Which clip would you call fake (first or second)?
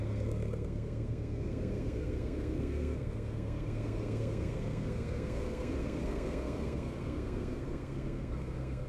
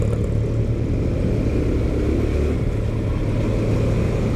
first